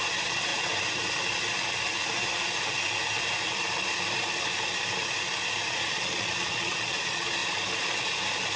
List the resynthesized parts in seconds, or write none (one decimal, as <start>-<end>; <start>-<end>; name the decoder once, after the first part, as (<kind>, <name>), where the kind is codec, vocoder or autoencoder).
0.0-0.5 (vocoder, Vocos); 5.7-7.4